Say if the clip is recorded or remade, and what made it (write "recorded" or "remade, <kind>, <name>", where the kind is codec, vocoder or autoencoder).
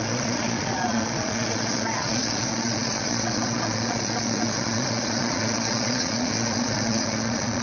remade, vocoder, Vocos